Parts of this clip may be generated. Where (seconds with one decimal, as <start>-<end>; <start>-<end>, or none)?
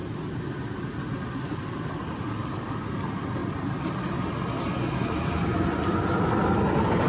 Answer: 1.3-7.1